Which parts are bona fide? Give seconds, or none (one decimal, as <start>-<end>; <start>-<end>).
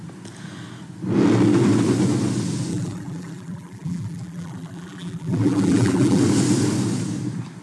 0.0-2.7; 6.2-7.6